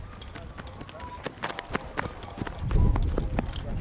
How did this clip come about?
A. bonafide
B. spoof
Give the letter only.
A